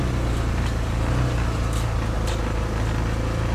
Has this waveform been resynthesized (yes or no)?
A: no